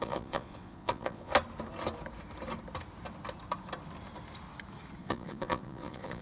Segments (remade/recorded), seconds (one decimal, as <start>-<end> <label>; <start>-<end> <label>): 0.0-1.3 remade; 1.3-5.0 recorded; 5.0-6.2 remade